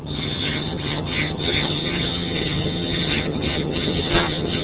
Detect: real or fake fake